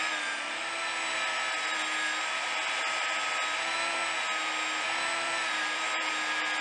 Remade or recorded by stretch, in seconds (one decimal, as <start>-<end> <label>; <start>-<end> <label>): 0.0-6.6 recorded